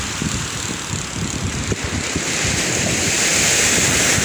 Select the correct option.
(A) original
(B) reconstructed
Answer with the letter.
B